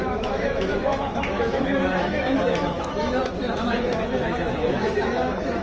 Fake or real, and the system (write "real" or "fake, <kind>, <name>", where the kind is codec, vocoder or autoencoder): fake, autoencoder, DAC-VAE